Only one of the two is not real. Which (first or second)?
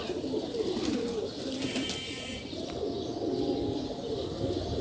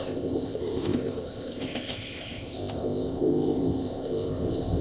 second